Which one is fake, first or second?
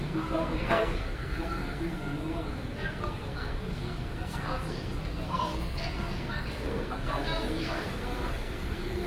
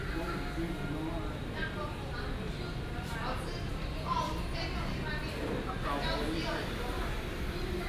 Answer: first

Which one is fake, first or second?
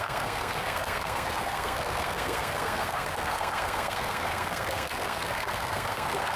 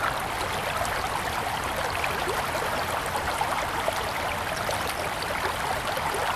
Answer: first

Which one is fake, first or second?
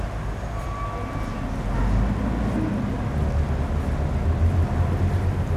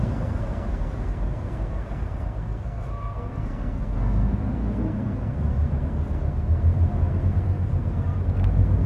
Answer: second